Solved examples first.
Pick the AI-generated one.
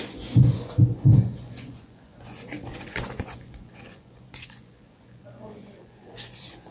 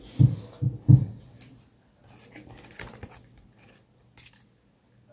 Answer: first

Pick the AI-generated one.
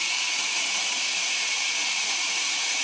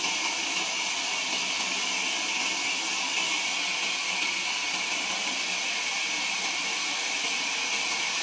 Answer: first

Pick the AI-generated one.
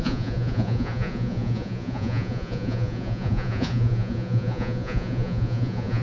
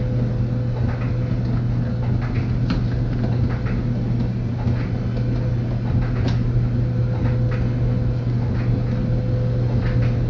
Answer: first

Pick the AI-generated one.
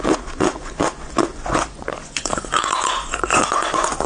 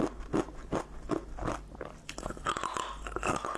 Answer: first